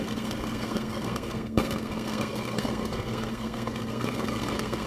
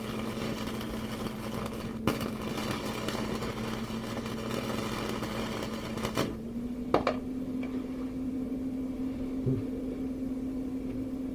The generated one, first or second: first